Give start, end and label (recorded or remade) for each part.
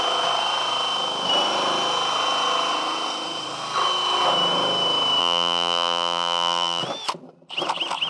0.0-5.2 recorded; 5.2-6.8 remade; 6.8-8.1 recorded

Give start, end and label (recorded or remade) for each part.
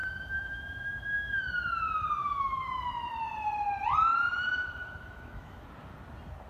0.0-1.4 remade; 1.4-2.2 recorded; 2.2-2.8 remade; 2.8-4.1 recorded; 4.1-5.7 remade; 5.7-6.5 recorded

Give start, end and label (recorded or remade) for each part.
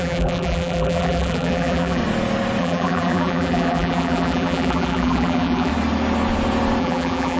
0.0-2.0 remade; 2.0-2.6 recorded; 2.6-5.7 remade; 5.7-6.8 recorded; 6.8-7.4 remade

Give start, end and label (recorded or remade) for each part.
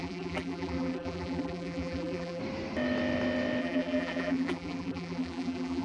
0.0-2.4 remade; 2.4-3.6 recorded; 3.6-5.8 remade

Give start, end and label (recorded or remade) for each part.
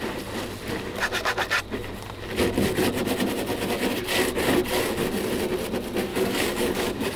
0.0-6.1 recorded; 6.1-7.2 remade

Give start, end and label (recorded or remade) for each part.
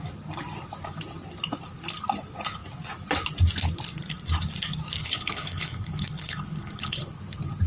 0.0-5.0 recorded; 5.0-7.2 remade; 7.2-7.7 recorded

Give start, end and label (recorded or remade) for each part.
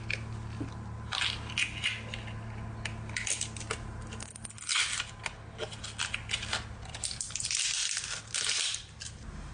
0.0-9.5 recorded